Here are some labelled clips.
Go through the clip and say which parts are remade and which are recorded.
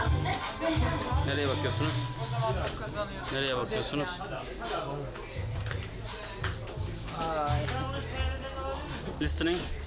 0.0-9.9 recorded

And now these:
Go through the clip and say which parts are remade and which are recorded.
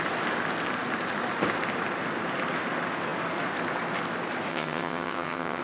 0.0-4.5 recorded; 4.5-5.6 remade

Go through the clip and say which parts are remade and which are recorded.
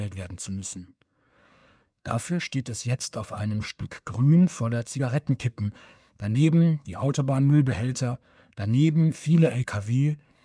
0.0-10.4 remade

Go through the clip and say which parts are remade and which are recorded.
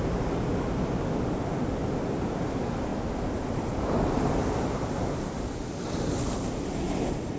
0.0-7.4 recorded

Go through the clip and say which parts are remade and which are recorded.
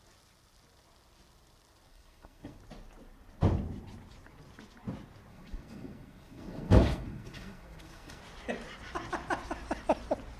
0.0-1.9 recorded; 1.9-2.6 remade; 2.6-5.3 recorded; 5.3-8.2 remade; 8.2-10.4 recorded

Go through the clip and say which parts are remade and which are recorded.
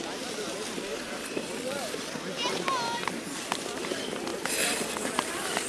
0.0-5.7 recorded